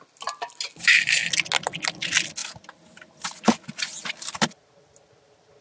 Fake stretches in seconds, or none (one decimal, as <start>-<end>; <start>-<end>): none